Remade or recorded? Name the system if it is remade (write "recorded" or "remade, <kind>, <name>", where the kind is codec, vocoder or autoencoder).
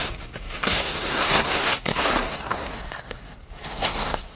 remade, codec, SNAC